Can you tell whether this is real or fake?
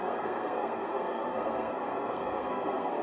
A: fake